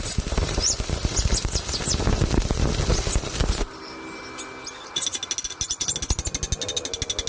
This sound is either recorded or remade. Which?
recorded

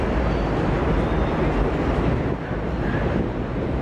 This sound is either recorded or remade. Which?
recorded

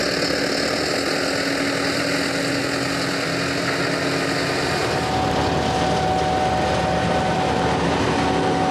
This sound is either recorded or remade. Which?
recorded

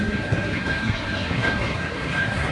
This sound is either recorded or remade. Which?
remade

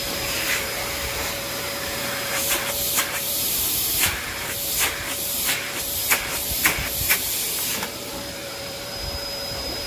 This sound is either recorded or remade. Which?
remade